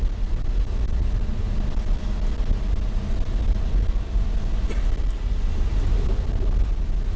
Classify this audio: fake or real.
real